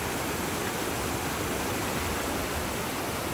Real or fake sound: real